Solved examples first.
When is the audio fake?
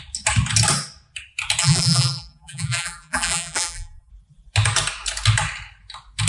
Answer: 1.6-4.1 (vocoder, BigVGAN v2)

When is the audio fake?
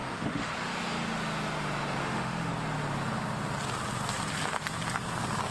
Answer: 0.0-0.5 (autoencoder, DAC-VAE); 2.0-2.5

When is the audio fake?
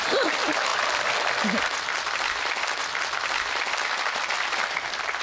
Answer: none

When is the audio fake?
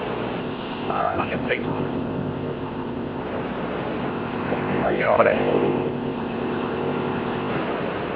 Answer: 0.4-3.2 (codec, ZipCodec); 4.1-7.5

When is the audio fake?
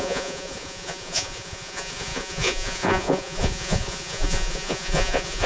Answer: 0.0-5.5 (vocoder, Vocos)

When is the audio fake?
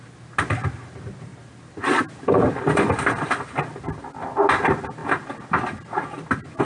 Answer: none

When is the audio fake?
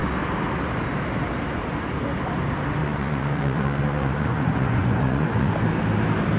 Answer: 2.8-5.5 (vocoder, Vocos)